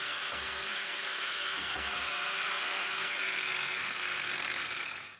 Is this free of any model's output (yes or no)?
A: no